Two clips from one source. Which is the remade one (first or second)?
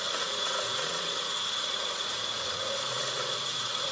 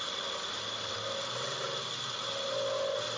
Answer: first